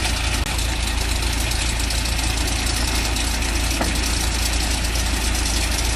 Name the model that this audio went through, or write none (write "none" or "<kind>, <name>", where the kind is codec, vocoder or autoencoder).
none